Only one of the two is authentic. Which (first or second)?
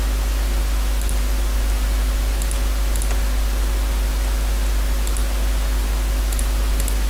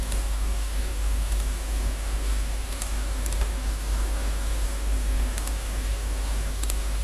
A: first